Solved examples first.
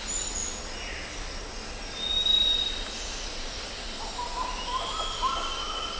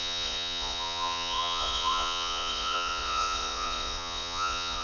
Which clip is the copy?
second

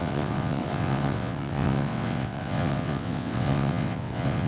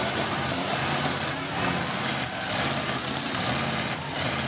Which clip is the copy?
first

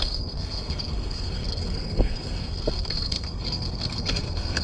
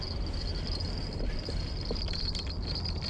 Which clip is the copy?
first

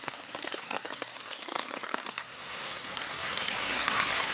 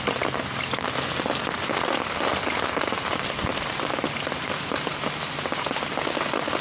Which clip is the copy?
first